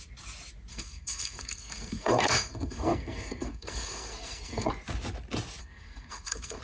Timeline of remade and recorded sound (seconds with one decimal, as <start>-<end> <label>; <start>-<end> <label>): 0.0-0.7 recorded; 0.7-4.7 remade; 4.7-5.6 recorded; 5.6-6.6 remade